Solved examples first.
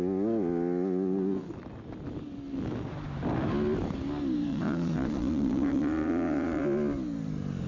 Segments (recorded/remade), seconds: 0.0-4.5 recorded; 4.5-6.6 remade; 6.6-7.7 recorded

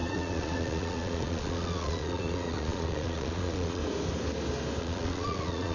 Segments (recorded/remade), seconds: 0.0-3.8 remade; 3.8-4.8 recorded; 4.8-5.7 remade

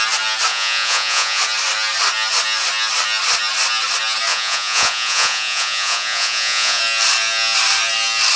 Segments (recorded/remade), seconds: 0.0-0.5 recorded; 0.5-1.4 remade; 1.4-4.3 recorded; 4.3-6.8 remade; 6.8-8.4 recorded

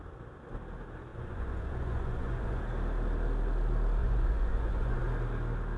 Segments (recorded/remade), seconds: 0.0-1.1 recorded; 1.1-2.6 remade; 2.6-4.0 recorded; 4.0-5.0 remade; 5.0-5.8 recorded